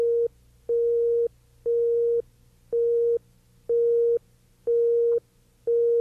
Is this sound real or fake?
real